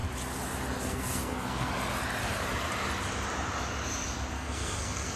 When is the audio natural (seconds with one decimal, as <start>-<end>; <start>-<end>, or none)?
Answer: 0.0-0.8; 1.7-4.3